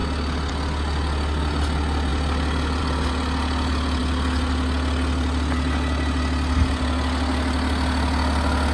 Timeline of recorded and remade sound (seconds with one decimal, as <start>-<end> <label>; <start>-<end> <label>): 0.0-8.7 recorded